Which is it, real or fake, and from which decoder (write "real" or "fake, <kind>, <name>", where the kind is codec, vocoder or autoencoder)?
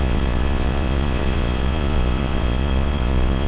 fake, vocoder, Vocos